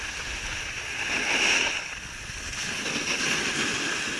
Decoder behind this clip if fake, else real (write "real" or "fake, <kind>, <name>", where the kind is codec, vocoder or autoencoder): real